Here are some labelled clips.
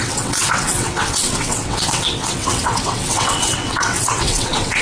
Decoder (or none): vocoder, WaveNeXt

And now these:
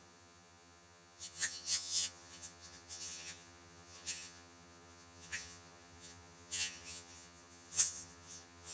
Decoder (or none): vocoder, HiFi-GAN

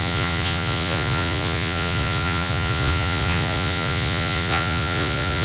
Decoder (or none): vocoder, Vocos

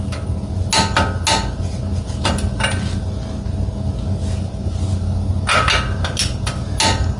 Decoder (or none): none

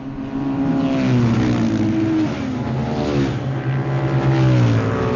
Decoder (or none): none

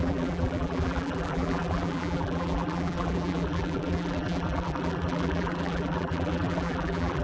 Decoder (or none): vocoder, BigVGAN v2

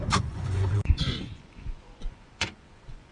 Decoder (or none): vocoder, Vocos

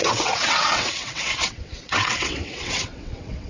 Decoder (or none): vocoder, WaveNeXt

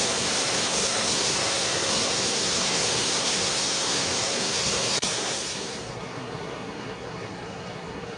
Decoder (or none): codec, SNAC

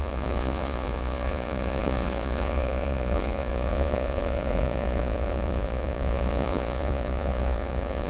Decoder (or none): vocoder, Vocos